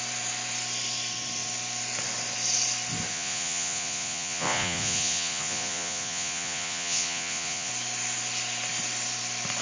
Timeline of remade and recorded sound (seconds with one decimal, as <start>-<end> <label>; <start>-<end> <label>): 0.0-3.1 recorded; 3.1-7.7 remade; 7.7-9.6 recorded